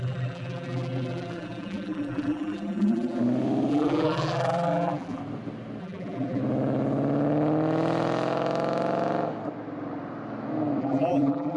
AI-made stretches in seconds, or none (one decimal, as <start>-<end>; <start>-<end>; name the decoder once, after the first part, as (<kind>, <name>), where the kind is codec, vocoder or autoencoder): 0.0-3.2 (vocoder, BigVGAN v2); 3.7-5.2; 5.8-6.4; 10.8-11.6